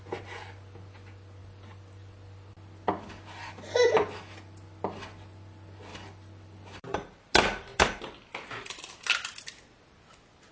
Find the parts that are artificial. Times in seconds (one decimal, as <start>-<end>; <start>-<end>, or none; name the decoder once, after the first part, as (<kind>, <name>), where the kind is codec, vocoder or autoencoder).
1.4-2.5 (vocoder, BigVGAN v2); 5.9-8.9